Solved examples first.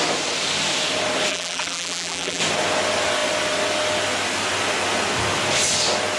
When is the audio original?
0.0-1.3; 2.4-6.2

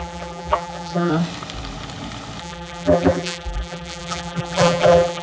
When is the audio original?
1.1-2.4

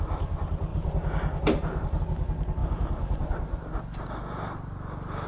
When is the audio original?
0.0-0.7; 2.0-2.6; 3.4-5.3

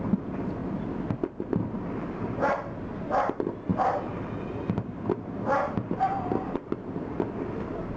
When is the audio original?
0.6-1.7

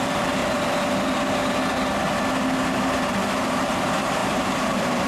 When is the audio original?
0.4-3.5

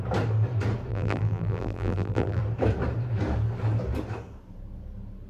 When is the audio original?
0.0-0.9; 2.4-5.3